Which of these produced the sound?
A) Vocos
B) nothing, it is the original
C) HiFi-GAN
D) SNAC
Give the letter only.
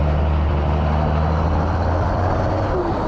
B